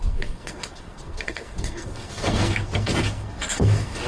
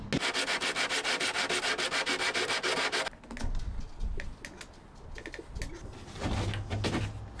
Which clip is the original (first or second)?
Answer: second